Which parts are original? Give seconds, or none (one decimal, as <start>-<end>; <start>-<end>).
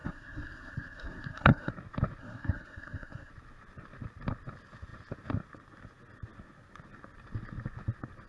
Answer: 1.7-2.2; 3.3-8.3